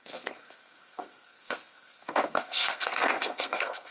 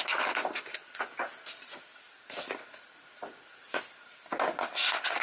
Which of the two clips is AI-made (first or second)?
first